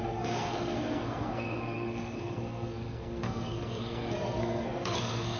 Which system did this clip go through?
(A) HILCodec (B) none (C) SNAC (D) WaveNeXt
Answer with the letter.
C